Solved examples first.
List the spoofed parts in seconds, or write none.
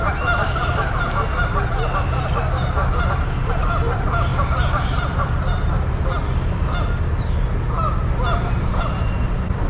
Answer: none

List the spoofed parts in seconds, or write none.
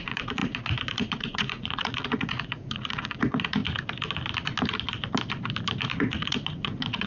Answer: 0.0-3.6; 5.9-7.1